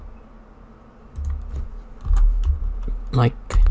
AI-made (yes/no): no